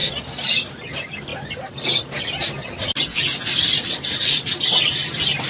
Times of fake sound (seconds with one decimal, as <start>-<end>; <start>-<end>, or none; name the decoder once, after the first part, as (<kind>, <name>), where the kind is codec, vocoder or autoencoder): none